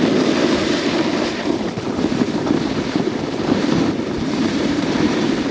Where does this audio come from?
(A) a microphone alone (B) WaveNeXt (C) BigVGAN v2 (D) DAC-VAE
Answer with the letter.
C